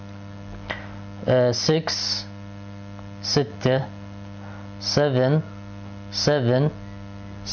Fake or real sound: real